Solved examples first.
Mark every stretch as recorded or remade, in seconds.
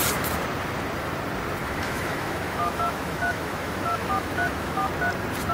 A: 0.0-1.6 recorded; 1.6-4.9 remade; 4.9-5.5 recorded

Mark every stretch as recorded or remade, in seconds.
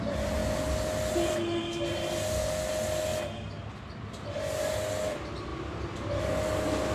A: 0.0-6.9 recorded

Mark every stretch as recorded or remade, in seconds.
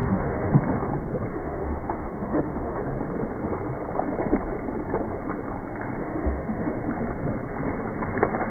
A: 0.0-0.5 remade; 0.5-1.3 recorded; 1.3-2.8 remade; 2.8-6.0 recorded; 6.0-6.8 remade; 6.8-8.5 recorded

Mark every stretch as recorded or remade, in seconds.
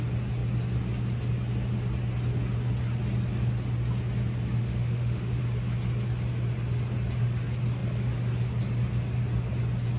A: 0.0-4.6 recorded; 4.6-5.4 remade; 5.4-10.0 recorded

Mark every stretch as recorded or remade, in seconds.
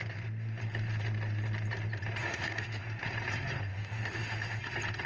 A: 0.0-2.2 recorded; 2.2-2.8 remade; 2.8-3.7 recorded; 3.7-4.6 remade; 4.6-5.1 recorded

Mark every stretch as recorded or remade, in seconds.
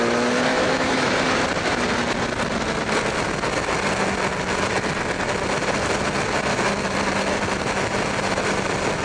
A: 0.0-0.5 recorded; 0.5-1.1 remade; 1.1-9.0 recorded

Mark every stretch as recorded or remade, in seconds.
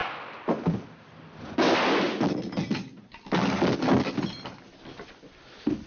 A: 0.0-5.9 recorded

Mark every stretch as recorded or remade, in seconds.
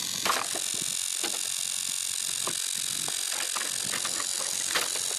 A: 0.0-5.2 recorded